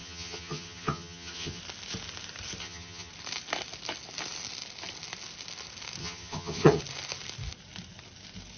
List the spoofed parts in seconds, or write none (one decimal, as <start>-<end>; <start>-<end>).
0.0-1.6; 2.6-3.1; 6.0-6.8